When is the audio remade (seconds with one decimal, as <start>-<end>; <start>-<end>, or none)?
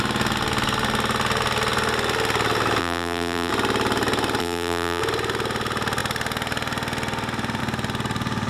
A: 2.8-3.5; 4.4-5.0